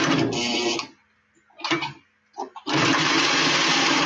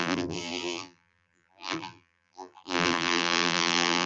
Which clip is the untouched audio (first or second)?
first